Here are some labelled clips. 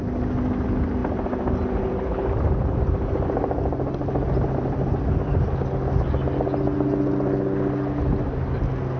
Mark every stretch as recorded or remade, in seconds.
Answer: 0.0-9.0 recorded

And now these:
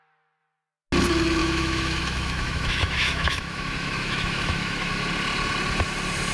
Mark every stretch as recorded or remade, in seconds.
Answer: 0.0-1.4 recorded; 1.4-4.9 remade; 4.9-6.3 recorded